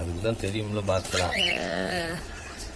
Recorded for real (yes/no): no